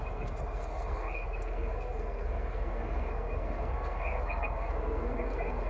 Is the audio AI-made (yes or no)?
yes